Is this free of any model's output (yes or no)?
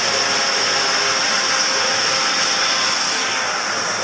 yes